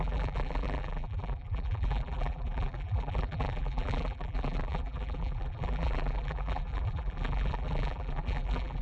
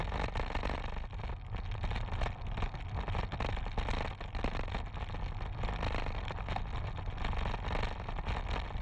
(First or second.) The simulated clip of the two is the first